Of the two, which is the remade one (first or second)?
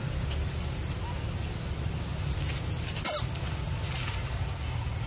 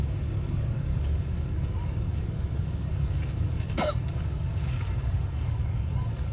second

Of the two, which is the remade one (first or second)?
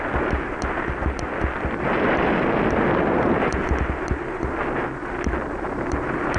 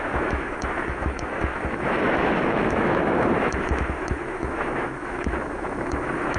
second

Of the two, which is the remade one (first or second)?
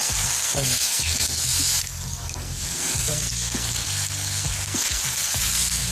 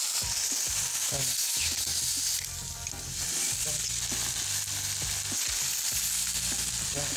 first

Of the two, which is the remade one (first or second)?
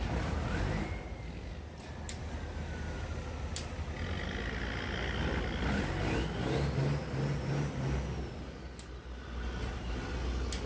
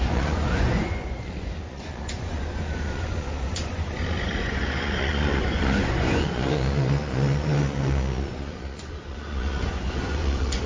second